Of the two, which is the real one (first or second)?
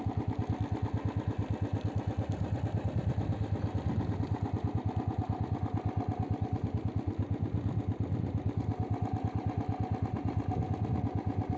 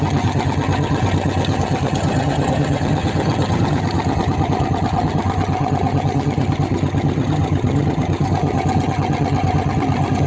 first